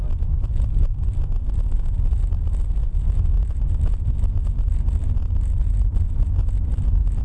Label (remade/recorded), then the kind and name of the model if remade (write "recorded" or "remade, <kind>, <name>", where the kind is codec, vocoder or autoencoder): remade, vocoder, BigVGAN v2